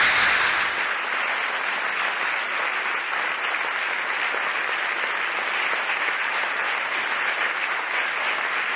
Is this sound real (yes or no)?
yes